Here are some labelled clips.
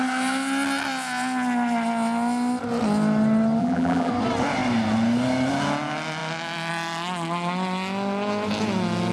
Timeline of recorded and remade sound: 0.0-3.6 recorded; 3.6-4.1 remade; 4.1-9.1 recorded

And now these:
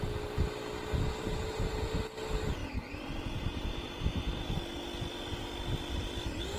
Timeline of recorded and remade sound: 0.0-1.1 recorded; 1.1-2.0 remade; 2.0-6.6 recorded

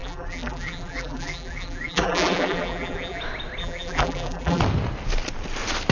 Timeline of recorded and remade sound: 0.0-3.2 remade; 3.2-3.6 recorded; 3.6-4.6 remade; 4.6-5.9 recorded